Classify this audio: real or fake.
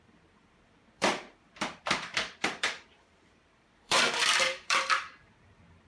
fake